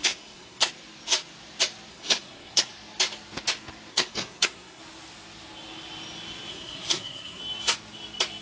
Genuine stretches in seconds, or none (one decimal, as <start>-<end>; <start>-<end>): 0.7-1.9; 2.7-3.9; 4.8-6.5; 7.4-8.4